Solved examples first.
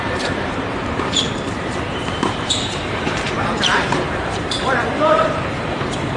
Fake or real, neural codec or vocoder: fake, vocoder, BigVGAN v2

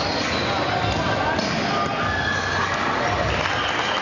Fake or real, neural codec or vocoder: real